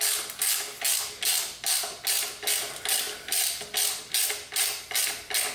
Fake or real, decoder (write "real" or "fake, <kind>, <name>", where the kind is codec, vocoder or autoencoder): real